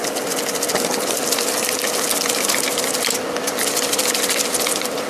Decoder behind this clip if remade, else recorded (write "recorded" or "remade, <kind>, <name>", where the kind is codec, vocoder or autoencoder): recorded